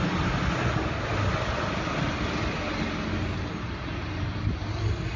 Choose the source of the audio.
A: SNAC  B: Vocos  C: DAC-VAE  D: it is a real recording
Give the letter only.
D